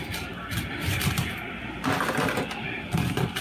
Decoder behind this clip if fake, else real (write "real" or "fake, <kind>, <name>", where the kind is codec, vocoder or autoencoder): real